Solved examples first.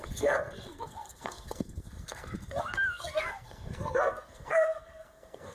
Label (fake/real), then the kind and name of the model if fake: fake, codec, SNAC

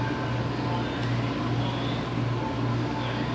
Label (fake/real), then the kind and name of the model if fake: real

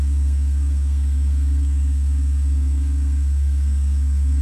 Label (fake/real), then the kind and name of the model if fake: fake, codec, SNAC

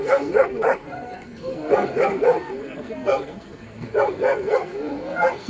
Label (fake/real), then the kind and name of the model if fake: fake, codec, SNAC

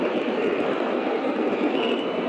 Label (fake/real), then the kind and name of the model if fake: fake, codec, SNAC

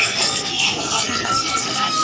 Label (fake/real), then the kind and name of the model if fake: fake, codec, SNAC